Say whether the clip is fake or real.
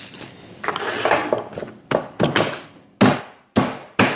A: real